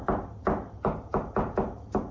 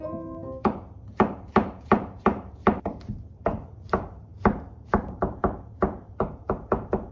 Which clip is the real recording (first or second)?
first